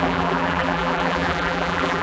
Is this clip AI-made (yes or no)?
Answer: yes